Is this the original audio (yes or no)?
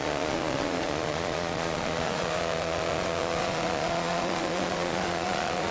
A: no